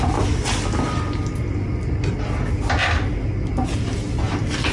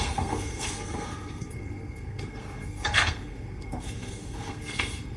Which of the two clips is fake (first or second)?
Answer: second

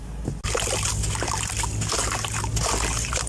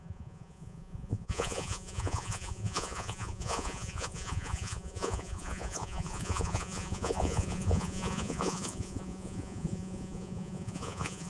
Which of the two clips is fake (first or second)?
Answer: second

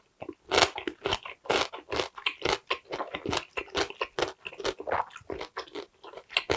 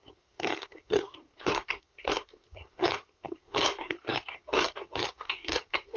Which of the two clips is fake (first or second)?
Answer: second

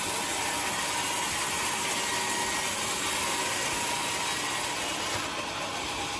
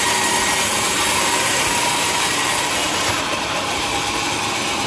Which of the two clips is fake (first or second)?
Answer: second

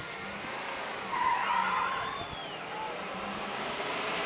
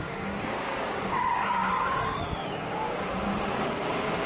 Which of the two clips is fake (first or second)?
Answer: second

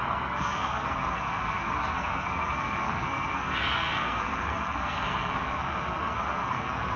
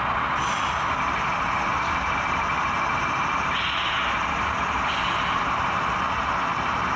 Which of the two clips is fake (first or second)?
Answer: first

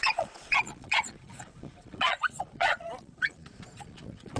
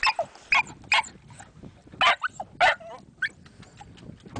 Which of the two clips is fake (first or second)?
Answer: first